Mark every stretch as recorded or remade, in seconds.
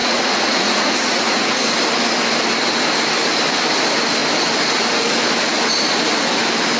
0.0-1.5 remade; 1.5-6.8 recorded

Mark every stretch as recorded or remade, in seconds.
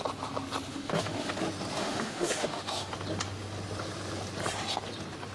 0.0-0.7 recorded; 0.7-1.3 remade; 1.3-1.8 recorded; 1.8-2.9 remade; 2.9-5.3 recorded